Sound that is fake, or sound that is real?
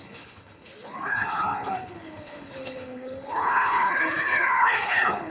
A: fake